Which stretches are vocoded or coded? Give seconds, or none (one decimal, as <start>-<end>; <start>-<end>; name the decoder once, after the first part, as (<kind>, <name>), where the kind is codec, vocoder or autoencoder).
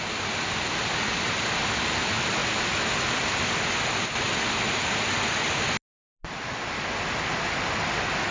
none